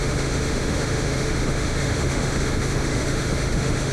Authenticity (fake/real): fake